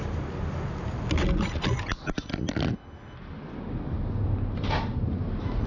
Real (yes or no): yes